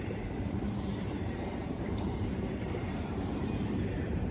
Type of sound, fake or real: fake